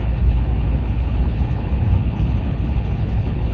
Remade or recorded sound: remade